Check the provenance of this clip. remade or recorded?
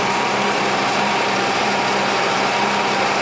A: remade